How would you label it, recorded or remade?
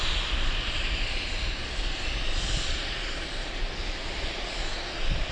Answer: recorded